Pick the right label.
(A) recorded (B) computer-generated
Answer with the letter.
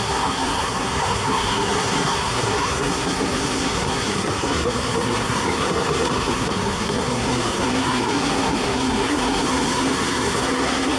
B